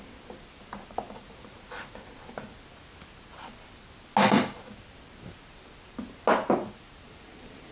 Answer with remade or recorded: recorded